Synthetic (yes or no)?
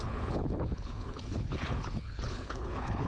yes